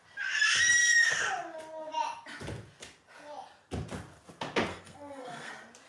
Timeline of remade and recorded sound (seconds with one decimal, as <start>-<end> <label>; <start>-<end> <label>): 0.0-4.7 recorded; 4.7-5.5 remade; 5.5-5.9 recorded